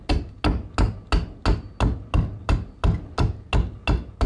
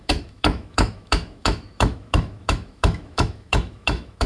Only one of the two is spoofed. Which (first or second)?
second